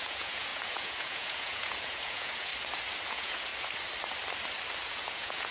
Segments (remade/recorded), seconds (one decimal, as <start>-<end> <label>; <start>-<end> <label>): 0.0-2.5 remade; 2.5-3.1 recorded; 3.1-3.5 remade; 3.5-4.9 recorded; 4.9-5.5 remade